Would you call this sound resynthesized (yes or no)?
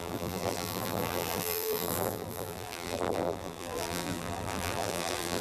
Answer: yes